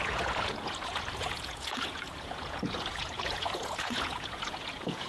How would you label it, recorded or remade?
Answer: remade